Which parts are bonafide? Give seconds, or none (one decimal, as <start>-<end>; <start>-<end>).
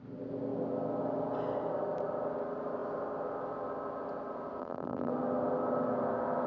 0.0-4.6; 5.1-6.5